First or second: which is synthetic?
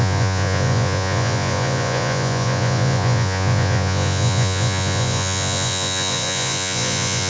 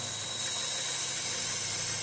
first